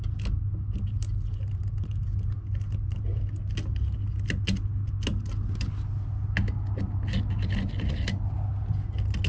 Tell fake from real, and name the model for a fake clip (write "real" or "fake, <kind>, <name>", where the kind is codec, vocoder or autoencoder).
real